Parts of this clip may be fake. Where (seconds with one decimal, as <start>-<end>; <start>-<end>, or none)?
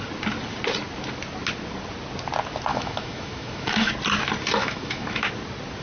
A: 2.7-3.9; 4.6-5.3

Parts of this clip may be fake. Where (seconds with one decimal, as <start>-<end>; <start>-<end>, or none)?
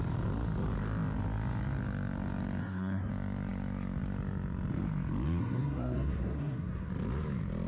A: 2.6-3.1; 5.4-6.9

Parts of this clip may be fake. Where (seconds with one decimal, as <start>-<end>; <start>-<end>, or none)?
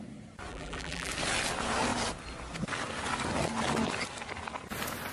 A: 0.5-1.1